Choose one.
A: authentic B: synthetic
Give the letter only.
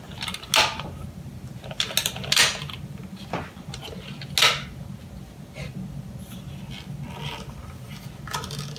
A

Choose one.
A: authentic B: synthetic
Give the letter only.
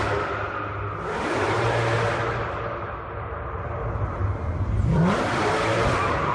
A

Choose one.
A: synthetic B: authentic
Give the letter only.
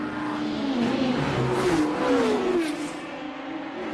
B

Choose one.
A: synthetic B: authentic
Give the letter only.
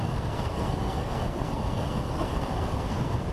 A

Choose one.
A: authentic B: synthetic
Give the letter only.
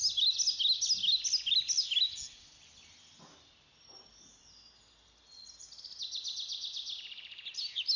A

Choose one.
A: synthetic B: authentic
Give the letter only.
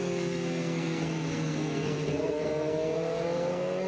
A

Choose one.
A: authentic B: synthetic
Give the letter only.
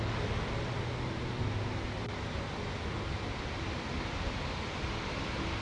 A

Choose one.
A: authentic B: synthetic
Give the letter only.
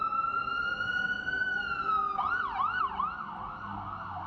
A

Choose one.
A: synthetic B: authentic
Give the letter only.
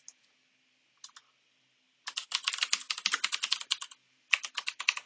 B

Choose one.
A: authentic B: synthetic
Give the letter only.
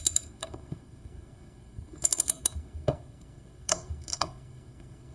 B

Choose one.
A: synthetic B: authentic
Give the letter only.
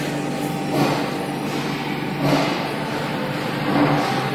B